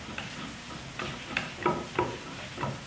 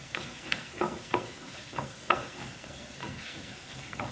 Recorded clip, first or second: first